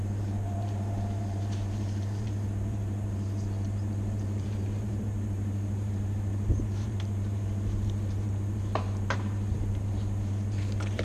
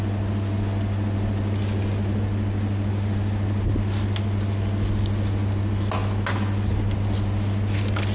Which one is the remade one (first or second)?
first